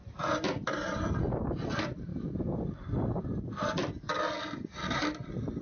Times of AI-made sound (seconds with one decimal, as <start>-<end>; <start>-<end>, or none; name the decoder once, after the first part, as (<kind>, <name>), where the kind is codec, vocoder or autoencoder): 0.0-5.6 (vocoder, BigVGAN v2)